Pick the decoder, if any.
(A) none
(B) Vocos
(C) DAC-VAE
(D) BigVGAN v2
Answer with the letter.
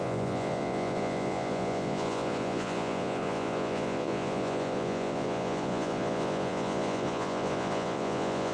B